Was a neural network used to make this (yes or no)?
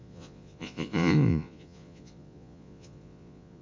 yes